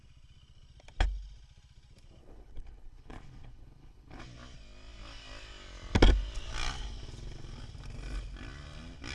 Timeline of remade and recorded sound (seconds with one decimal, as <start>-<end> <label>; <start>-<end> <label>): 0.0-2.2 recorded; 2.2-4.2 remade; 4.2-9.1 recorded